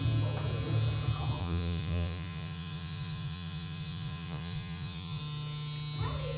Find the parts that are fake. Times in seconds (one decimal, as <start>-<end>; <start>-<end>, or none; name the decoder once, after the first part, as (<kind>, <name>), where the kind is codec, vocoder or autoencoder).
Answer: 1.4-5.2 (vocoder, Vocos)